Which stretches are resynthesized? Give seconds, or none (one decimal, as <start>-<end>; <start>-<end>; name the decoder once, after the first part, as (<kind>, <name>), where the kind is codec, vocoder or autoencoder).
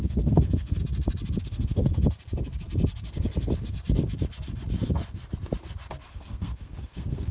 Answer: 0.0-0.8 (codec, SNAC); 1.4-1.9; 6.1-7.3